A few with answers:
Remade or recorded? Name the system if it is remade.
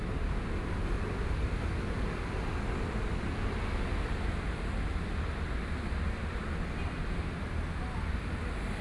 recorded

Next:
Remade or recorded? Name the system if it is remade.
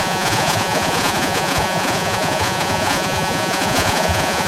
remade, vocoder, Vocos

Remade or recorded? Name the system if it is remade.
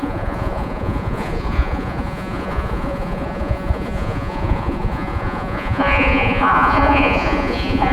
remade, vocoder, Vocos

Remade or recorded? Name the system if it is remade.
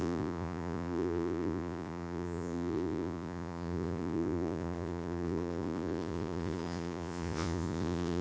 remade, vocoder, Vocos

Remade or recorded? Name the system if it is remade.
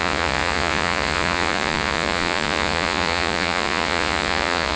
remade, vocoder, Vocos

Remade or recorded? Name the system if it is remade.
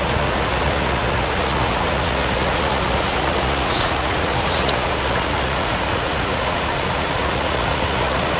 remade, vocoder, Vocos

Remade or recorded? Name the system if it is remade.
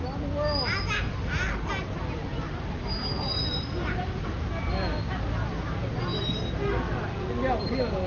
recorded